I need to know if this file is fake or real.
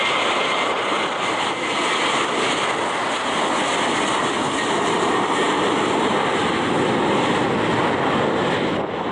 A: real